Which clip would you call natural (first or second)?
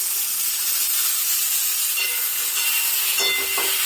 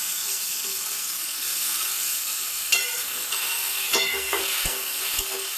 first